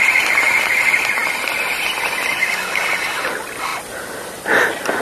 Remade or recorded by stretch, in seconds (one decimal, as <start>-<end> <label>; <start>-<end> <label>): 0.0-1.2 remade; 1.2-3.3 recorded; 3.3-3.7 remade; 3.7-5.0 recorded